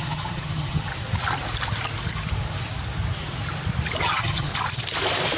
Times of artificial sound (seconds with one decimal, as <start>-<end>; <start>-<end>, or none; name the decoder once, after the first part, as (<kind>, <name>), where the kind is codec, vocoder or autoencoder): 0.0-0.9 (vocoder, HiFi-GAN); 4.0-4.5